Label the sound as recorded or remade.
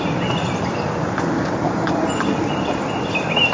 recorded